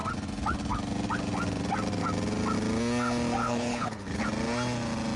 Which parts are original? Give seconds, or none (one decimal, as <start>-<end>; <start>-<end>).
0.0-3.4; 4.2-5.2